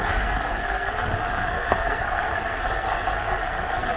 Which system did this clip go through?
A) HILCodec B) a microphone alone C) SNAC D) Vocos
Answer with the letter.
C